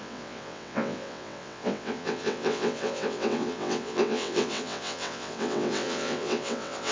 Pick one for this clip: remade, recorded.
remade